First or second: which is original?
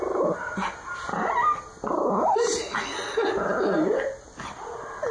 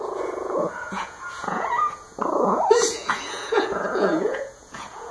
first